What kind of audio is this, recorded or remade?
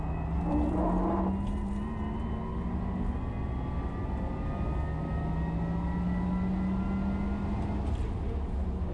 recorded